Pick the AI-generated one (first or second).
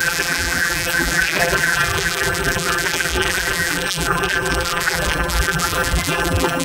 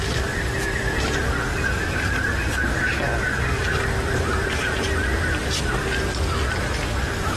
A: first